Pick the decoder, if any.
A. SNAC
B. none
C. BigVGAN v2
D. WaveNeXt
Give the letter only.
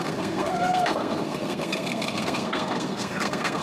A